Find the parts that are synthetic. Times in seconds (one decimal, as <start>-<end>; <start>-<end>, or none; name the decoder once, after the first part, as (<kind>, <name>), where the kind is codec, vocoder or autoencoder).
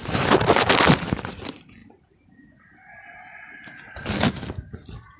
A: none